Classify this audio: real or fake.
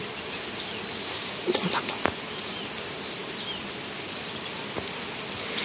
real